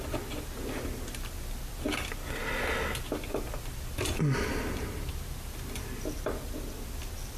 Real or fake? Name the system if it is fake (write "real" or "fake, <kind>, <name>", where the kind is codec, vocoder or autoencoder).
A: real